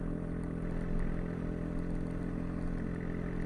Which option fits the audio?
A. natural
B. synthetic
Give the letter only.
A